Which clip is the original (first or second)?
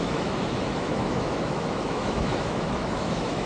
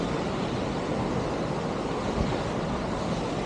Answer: second